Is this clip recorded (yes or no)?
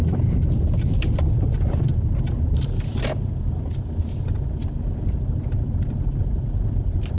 yes